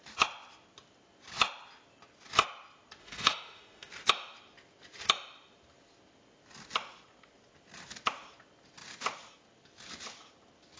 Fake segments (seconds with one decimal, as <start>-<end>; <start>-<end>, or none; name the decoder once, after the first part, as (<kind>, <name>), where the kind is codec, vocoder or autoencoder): 3.0-3.9 (autoencoder, DAC-VAE)